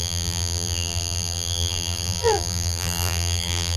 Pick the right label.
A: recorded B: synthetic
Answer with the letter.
B